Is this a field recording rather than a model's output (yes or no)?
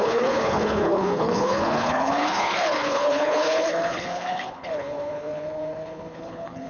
no